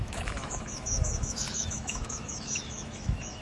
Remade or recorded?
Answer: remade